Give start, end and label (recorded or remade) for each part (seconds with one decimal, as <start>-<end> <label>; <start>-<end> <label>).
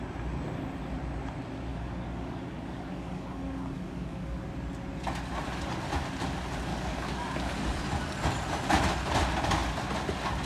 0.0-1.7 recorded; 1.7-4.5 remade; 4.5-6.7 recorded; 6.7-7.8 remade; 7.8-10.5 recorded